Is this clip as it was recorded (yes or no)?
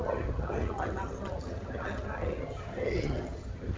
no